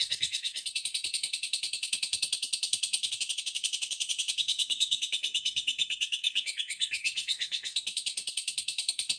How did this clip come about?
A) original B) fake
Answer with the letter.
B